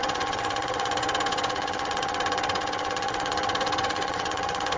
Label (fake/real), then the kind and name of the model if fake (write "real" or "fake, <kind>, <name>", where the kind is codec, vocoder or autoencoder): fake, vocoder, WaveNeXt